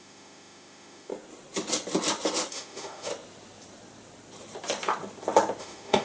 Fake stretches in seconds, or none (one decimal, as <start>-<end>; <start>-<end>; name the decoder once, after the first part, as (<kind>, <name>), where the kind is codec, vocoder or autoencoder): 0.0-1.1 (autoencoder, DAC-VAE); 2.5-3.1; 5.6-6.0